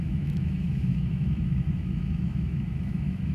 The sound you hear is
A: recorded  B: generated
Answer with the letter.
B